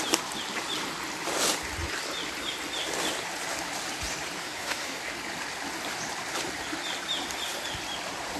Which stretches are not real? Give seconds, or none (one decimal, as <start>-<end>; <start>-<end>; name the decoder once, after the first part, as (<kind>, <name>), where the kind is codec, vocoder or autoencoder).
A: 4.4-5.0 (codec, SNAC)